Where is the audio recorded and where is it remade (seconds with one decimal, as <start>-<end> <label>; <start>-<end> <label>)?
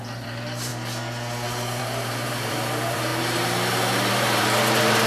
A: 0.0-0.7 remade; 0.7-1.8 recorded; 1.8-3.1 remade; 3.1-4.1 recorded; 4.1-5.1 remade